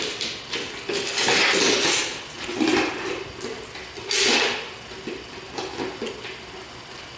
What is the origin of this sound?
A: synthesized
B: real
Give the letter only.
B